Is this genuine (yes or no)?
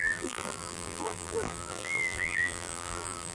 no